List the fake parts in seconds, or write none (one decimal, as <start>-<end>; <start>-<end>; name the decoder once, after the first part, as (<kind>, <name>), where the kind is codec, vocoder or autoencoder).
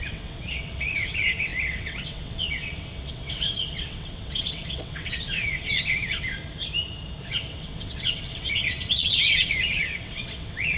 0.0-6.4 (vocoder, WaveNeXt); 7.2-10.8